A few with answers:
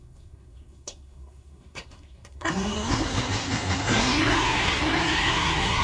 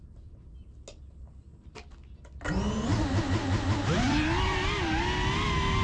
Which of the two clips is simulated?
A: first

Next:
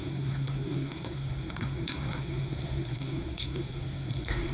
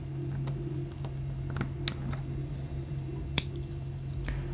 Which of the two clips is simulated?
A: first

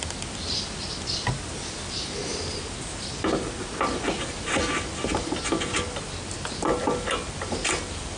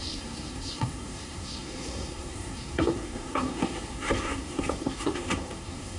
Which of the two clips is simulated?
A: second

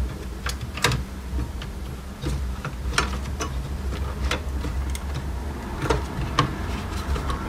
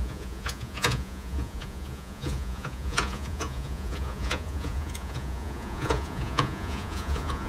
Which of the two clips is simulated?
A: second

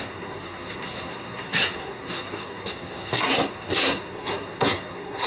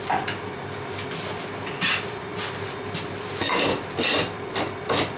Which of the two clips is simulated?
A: first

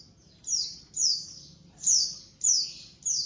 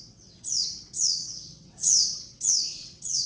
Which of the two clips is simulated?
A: second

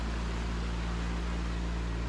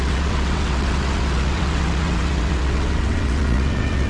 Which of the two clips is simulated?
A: second